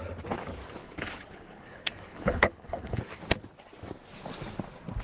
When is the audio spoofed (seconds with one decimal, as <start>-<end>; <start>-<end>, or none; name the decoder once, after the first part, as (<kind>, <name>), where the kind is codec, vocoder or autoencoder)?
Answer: 0.8-3.0 (codec, HILCodec)